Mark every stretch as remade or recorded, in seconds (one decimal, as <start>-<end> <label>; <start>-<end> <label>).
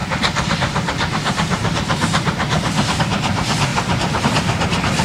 0.0-3.0 remade; 3.0-3.7 recorded; 3.7-4.2 remade; 4.2-5.0 recorded